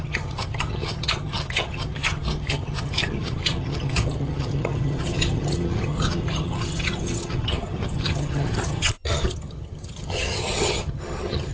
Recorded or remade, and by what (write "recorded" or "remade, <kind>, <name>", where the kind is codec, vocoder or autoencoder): remade, vocoder, HiFi-GAN